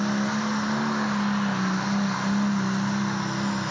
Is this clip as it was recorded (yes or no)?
yes